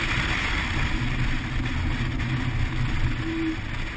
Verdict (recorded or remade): recorded